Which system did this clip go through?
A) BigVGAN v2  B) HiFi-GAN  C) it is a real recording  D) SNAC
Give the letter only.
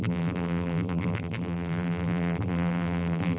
A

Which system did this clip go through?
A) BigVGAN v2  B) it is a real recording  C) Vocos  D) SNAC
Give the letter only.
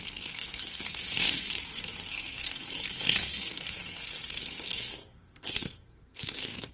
D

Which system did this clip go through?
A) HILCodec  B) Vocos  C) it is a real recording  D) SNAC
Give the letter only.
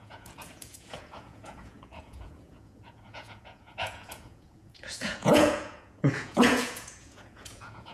B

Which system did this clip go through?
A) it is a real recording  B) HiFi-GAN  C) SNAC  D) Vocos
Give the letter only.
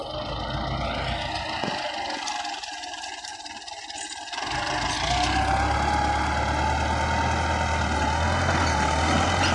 A